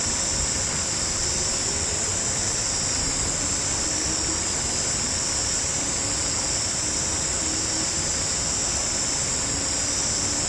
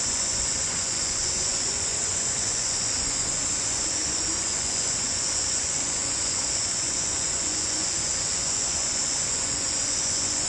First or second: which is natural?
first